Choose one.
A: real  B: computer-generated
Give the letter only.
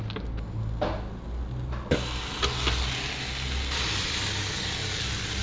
A